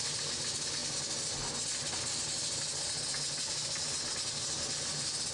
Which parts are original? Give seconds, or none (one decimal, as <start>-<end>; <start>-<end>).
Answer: 0.0-5.3